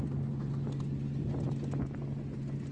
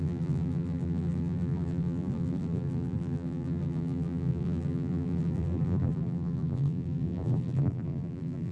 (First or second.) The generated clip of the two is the second